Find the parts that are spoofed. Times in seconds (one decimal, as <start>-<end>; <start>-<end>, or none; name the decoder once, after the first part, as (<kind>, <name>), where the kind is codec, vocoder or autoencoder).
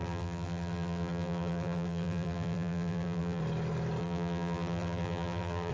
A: 0.0-3.4 (vocoder, BigVGAN v2); 4.0-5.7